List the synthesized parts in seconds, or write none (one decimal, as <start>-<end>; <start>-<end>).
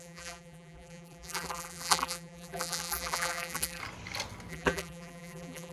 0.0-3.8; 4.5-5.7